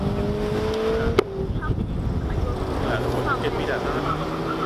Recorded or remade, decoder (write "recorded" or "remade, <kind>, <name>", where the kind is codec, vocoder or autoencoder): recorded